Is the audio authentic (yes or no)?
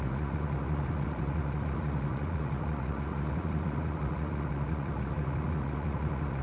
no